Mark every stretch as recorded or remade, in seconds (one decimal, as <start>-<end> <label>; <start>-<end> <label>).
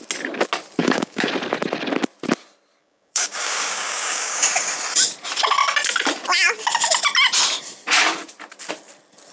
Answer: 0.0-0.8 recorded; 0.8-1.3 remade; 1.3-2.8 recorded; 2.8-4.7 remade; 4.7-9.3 recorded